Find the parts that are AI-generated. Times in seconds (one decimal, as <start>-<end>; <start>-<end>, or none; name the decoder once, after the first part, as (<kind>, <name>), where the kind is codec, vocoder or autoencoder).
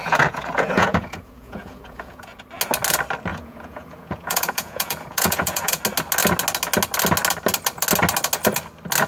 0.0-2.4 (vocoder, Vocos); 3.3-5.8